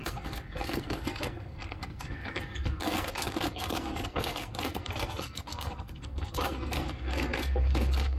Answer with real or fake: fake